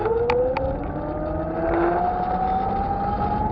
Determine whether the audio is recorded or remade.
recorded